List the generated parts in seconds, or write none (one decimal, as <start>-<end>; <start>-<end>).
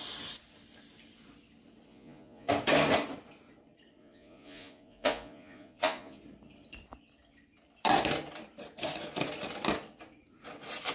1.9-2.5; 4.0-6.2